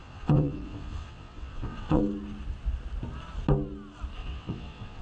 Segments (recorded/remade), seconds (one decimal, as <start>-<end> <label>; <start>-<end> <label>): 0.0-2.0 remade; 2.0-4.2 recorded; 4.2-5.0 remade